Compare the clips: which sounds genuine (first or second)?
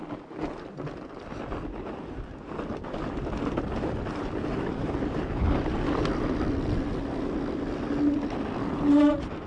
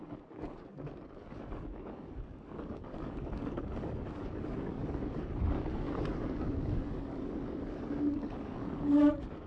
first